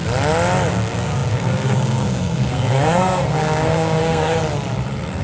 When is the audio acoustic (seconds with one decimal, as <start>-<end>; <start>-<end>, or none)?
0.0-0.7; 4.4-5.2